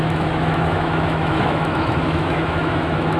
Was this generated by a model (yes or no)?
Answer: yes